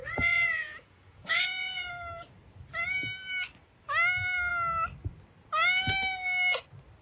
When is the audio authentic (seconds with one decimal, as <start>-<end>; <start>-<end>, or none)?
1.9-7.0